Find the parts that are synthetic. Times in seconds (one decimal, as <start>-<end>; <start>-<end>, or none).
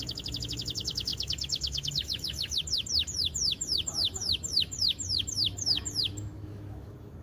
0.0-7.2